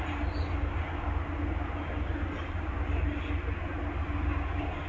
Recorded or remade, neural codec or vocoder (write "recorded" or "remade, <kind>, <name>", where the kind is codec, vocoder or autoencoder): recorded